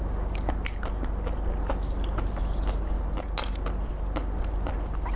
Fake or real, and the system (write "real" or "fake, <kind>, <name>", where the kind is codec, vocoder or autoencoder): real